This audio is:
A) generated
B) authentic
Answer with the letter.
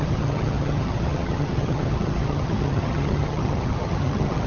A